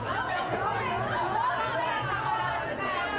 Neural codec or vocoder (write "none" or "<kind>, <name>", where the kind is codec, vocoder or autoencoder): vocoder, Vocos